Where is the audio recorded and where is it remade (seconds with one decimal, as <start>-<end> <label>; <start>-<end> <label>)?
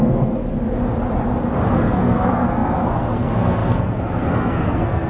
0.0-0.4 remade; 0.4-1.7 recorded; 1.7-5.1 remade